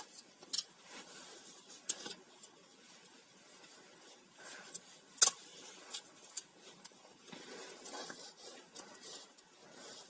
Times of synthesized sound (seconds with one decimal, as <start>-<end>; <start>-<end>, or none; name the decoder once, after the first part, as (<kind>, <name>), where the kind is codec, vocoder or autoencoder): none